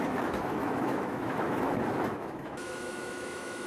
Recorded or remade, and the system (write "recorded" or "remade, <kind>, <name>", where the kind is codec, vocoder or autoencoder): remade, autoencoder, DAC-VAE